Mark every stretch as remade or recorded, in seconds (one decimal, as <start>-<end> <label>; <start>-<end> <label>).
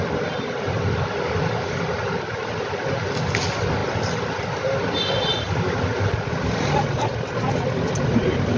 0.0-8.6 recorded